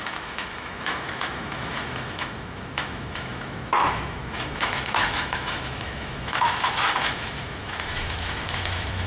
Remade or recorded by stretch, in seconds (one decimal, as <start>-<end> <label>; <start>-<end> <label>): 0.0-9.1 remade